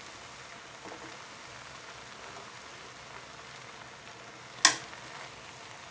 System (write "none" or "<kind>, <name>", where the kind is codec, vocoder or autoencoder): none